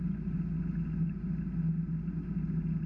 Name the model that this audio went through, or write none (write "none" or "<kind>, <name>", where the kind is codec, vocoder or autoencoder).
none